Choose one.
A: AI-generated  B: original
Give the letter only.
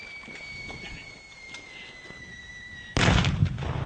B